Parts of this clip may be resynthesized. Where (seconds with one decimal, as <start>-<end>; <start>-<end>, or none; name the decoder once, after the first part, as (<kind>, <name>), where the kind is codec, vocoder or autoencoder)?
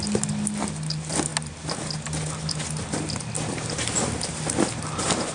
none